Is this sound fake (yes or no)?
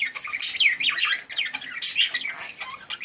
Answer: no